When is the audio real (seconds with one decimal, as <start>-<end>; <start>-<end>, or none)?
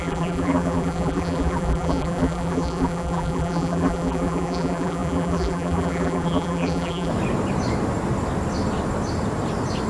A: 7.1-9.9